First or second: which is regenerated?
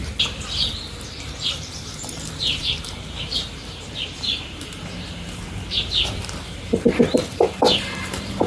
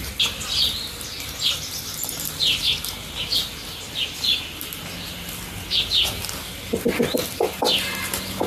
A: first